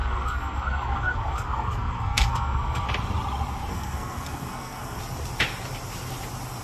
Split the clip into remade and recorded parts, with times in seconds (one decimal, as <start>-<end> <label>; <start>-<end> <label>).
0.0-2.9 remade; 2.9-3.7 recorded; 3.7-5.0 remade; 5.0-6.6 recorded